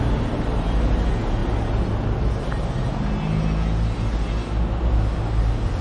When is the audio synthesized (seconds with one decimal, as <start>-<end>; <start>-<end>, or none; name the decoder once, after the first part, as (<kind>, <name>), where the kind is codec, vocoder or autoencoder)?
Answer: none